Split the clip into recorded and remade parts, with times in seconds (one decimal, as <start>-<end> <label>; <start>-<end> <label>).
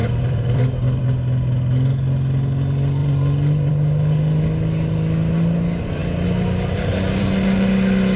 0.0-1.0 remade; 1.0-3.0 recorded; 3.0-3.7 remade; 3.7-8.2 recorded